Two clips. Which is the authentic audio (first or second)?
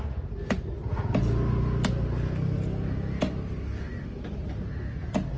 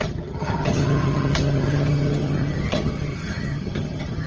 first